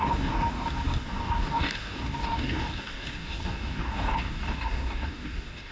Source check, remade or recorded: remade